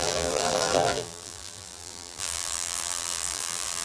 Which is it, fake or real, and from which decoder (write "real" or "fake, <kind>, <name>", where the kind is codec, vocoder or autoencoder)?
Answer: fake, vocoder, BigVGAN v2